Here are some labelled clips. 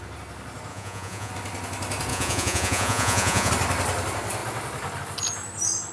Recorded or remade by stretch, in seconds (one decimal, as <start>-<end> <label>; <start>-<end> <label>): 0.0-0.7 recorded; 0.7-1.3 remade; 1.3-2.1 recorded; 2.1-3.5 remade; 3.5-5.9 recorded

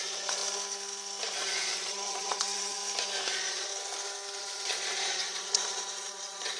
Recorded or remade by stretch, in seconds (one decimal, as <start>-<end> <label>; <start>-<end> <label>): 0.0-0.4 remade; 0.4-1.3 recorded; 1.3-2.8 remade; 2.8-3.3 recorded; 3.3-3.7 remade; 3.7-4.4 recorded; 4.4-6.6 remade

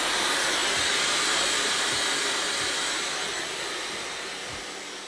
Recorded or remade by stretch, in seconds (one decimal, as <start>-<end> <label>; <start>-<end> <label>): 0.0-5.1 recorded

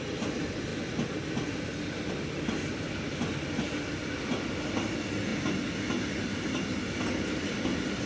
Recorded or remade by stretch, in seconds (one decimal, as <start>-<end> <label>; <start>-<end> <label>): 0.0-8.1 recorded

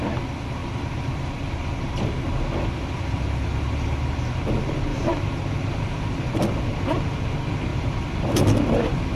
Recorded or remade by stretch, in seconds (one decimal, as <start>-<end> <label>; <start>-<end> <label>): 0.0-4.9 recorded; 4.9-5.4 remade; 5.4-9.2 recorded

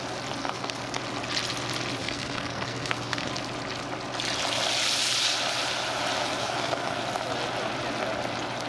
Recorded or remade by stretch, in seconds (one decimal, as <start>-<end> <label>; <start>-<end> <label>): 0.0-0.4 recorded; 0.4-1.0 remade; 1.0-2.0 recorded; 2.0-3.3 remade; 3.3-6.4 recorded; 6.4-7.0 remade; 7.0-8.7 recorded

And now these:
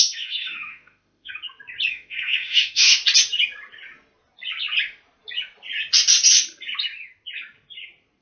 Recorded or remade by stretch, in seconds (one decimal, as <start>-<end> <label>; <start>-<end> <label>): 0.0-1.3 remade; 1.3-1.9 recorded; 1.9-3.0 remade; 3.0-8.2 recorded

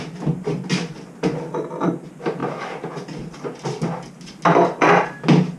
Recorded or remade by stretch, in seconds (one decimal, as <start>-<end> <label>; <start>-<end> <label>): 0.0-5.6 recorded